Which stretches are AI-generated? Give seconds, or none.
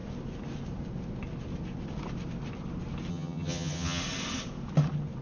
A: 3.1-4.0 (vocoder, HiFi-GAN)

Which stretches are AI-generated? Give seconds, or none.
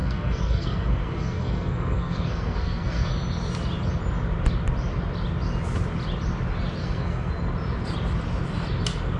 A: 0.0-3.1 (codec, SNAC); 6.8-7.3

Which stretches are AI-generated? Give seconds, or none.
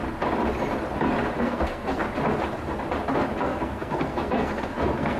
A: 1.4-2.0 (codec, SNAC); 3.4-5.2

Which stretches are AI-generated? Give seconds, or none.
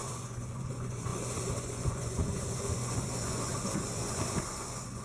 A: 0.0-5.0 (vocoder, Vocos)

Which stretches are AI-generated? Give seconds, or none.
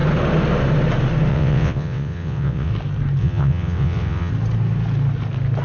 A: 1.3-2.7 (vocoder, WaveNeXt); 3.2-4.3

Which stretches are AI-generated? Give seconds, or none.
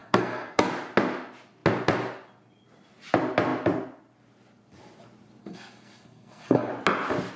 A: 0.0-0.7 (codec, SNAC); 5.4-6.7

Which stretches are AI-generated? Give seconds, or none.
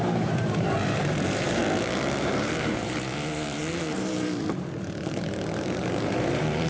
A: 0.0-1.6 (vocoder, BigVGAN v2); 2.2-6.7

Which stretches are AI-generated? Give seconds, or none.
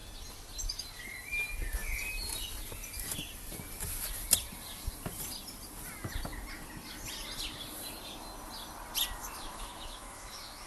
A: 9.2-10.7 (autoencoder, DAC-VAE)